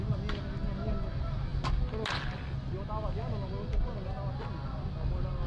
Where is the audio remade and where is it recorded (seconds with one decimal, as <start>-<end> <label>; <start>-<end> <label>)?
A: 0.0-5.5 recorded

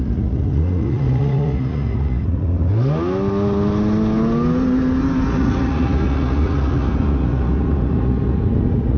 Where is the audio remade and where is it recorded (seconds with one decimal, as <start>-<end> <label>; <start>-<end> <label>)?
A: 0.0-2.7 remade; 2.7-5.3 recorded; 5.3-9.0 remade

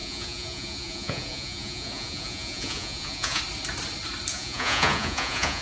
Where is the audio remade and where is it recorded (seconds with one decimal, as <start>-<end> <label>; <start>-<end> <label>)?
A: 0.0-3.4 remade; 3.4-4.3 recorded; 4.3-5.6 remade

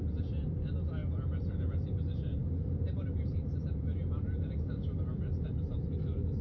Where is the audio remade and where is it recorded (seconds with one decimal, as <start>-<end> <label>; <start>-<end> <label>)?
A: 0.0-6.4 recorded

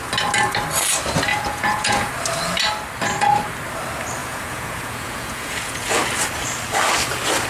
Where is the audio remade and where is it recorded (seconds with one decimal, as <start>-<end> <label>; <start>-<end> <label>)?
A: 0.0-1.3 recorded; 1.3-2.1 remade; 2.1-4.2 recorded; 4.2-5.9 remade; 5.9-7.5 recorded

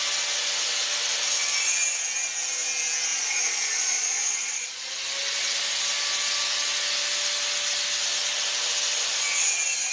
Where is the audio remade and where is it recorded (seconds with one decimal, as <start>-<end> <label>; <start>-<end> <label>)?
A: 0.0-3.1 recorded; 3.1-4.9 remade; 4.9-9.9 recorded

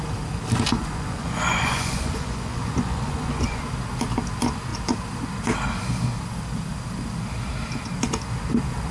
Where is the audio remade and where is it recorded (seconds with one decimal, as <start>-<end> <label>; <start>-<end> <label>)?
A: 0.0-0.8 recorded; 0.8-3.6 remade; 3.6-8.9 recorded

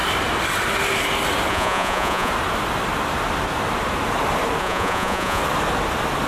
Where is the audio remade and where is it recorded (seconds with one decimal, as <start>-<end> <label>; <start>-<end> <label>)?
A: 0.0-1.5 recorded; 1.5-2.3 remade; 2.3-4.6 recorded; 4.6-5.4 remade; 5.4-6.3 recorded